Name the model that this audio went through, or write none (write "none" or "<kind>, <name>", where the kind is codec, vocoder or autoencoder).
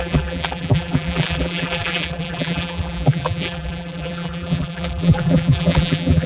vocoder, BigVGAN v2